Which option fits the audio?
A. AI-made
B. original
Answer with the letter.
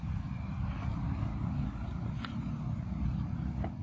B